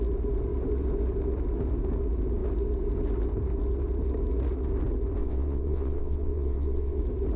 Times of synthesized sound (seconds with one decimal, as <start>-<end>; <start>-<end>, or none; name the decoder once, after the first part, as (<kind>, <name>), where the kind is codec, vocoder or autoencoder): 5.2-7.0 (vocoder, WaveNeXt)